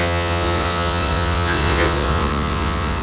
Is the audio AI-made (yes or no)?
yes